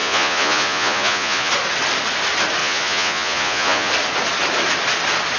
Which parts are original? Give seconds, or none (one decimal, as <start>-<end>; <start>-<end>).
1.5-2.6; 3.9-5.4